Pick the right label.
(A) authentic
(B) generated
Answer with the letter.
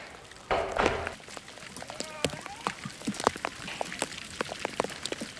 A